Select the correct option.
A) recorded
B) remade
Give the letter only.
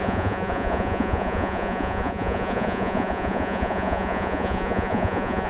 B